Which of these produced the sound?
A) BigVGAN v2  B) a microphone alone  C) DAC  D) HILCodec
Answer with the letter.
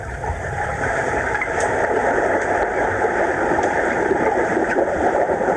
A